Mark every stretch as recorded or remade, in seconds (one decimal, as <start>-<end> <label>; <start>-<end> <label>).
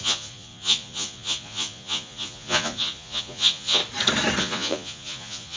0.0-3.8 remade; 3.8-4.4 recorded; 4.4-5.6 remade